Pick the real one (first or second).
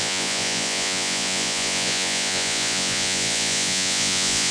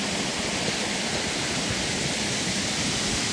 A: second